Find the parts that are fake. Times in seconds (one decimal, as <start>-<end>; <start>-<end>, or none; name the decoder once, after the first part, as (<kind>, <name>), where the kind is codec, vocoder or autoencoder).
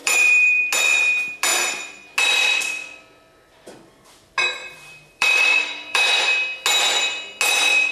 0.0-0.6 (vocoder, BigVGAN v2); 4.6-6.0